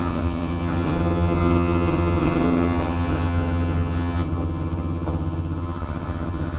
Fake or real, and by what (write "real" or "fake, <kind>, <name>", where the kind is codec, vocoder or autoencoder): fake, vocoder, HiFi-GAN